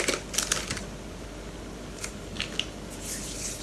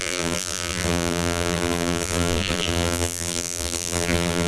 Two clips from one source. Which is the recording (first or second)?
first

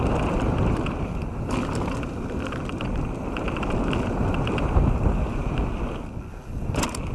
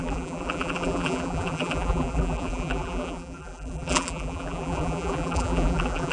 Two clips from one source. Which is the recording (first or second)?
first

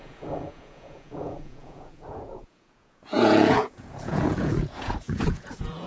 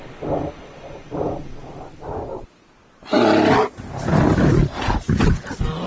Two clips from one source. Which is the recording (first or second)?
second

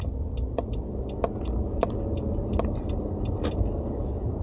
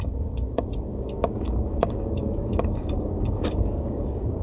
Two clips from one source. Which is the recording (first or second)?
first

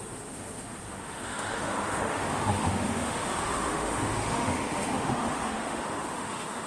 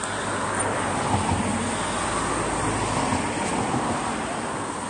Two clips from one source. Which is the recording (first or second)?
second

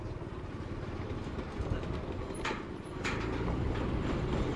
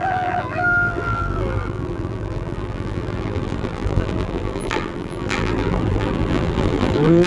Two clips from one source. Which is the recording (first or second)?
first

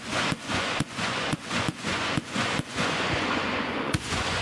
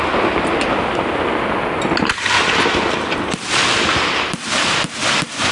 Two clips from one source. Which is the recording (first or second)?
second